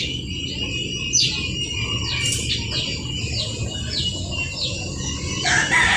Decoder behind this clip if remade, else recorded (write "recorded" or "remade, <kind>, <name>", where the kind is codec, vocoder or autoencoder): recorded